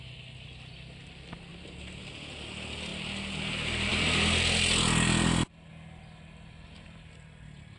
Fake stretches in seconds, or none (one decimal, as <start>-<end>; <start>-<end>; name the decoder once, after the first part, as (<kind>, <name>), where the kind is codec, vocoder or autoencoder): none